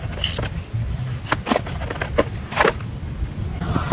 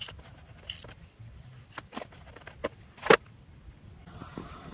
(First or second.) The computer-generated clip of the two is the second